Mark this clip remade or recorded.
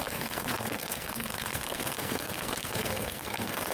remade